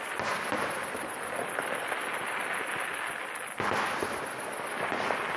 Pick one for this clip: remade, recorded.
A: recorded